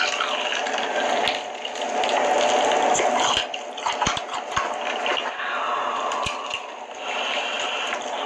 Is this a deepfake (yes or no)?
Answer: no